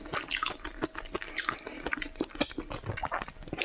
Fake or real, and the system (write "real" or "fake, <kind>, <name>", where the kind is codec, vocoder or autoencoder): real